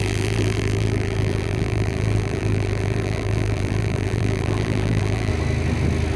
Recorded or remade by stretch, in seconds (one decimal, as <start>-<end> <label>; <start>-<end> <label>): 0.0-5.3 remade; 5.3-6.2 recorded